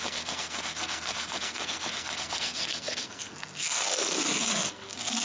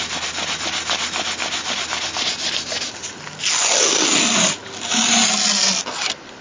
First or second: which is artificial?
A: first